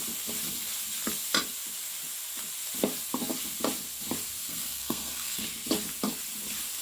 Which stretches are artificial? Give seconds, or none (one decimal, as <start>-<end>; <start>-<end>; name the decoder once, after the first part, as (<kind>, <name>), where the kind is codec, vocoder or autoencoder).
4.4-5.4 (codec, SNAC)